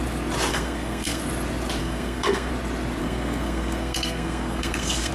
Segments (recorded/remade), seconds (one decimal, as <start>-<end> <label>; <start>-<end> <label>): 0.0-0.5 recorded; 0.5-1.2 remade; 1.2-1.8 recorded; 1.8-2.5 remade; 2.5-3.0 recorded; 3.0-5.1 remade